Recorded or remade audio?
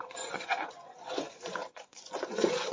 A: remade